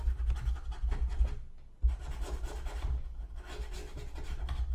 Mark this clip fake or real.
real